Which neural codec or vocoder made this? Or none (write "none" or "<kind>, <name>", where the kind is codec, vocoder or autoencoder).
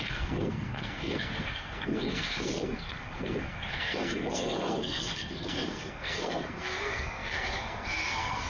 codec, SNAC